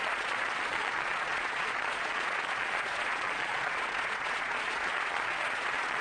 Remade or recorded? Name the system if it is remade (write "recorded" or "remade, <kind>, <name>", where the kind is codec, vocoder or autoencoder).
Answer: remade, vocoder, Vocos